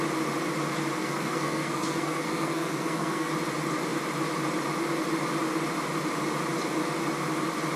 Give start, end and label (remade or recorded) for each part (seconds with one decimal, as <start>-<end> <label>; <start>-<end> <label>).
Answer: 0.0-1.0 recorded; 1.0-3.3 remade; 3.3-7.8 recorded